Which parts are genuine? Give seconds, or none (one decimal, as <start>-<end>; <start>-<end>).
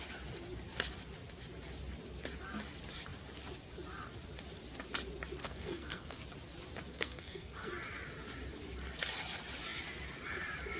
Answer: 0.0-5.4; 6.2-6.9; 7.7-10.8